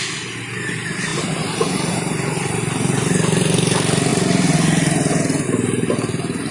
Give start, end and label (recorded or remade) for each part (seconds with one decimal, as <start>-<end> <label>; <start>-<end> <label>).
0.0-6.5 recorded